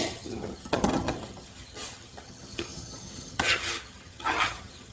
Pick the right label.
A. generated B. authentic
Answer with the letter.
A